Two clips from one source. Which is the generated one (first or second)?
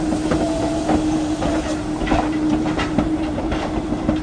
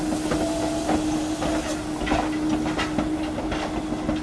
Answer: first